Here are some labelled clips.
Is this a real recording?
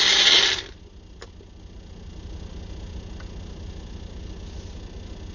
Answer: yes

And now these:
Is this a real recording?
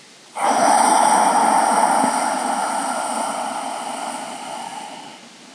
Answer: yes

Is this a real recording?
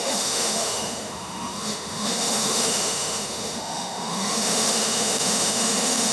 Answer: no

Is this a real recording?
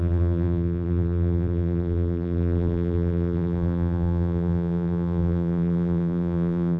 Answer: no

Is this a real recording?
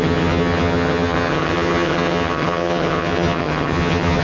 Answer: no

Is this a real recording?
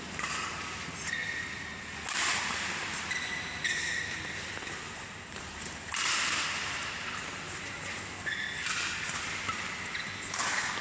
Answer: yes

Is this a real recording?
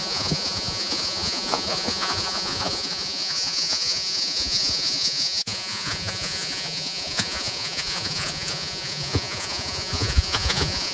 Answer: no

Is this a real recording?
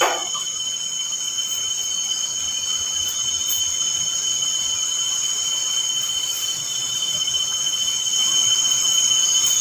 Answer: yes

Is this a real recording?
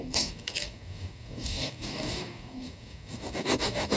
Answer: no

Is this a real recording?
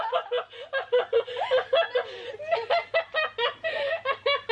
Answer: yes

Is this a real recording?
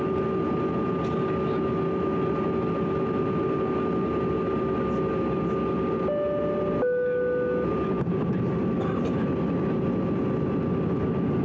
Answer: yes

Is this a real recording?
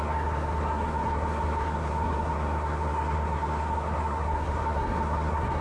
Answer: no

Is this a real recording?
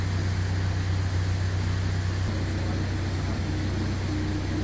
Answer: yes